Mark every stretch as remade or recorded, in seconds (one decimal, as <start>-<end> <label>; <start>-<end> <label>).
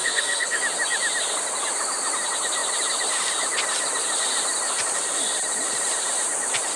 0.0-0.6 remade; 0.6-6.8 recorded